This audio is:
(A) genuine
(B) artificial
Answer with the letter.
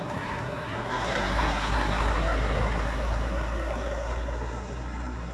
B